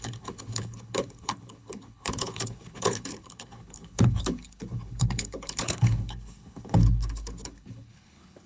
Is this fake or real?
fake